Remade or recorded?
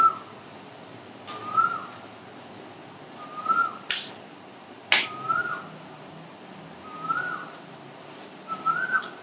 recorded